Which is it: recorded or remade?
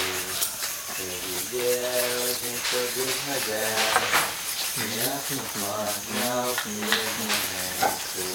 remade